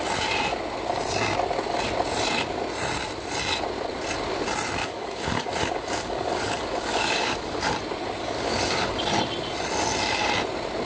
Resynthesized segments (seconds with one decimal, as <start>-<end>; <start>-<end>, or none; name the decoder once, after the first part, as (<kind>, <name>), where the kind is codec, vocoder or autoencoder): 4.8-7.6 (codec, DAC); 8.2-9.0